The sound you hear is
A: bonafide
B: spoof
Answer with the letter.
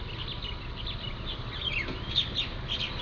A